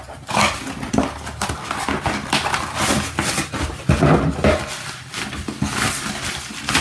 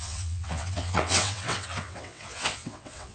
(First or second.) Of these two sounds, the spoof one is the second